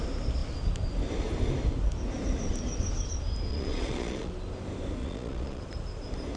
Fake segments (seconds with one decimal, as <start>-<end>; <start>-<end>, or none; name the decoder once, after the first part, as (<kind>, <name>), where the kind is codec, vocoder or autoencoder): 3.5-4.3 (vocoder, Vocos); 5.0-5.6